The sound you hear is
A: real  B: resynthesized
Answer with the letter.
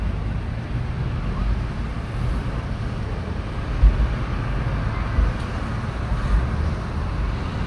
A